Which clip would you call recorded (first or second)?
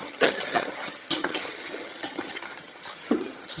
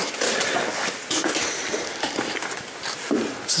second